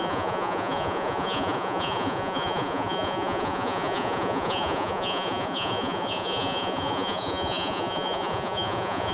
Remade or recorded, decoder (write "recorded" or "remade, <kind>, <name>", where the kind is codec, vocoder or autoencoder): remade, vocoder, Vocos